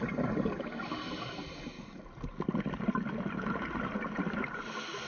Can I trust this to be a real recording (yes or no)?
yes